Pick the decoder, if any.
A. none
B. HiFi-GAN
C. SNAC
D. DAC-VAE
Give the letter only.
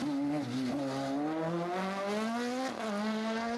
A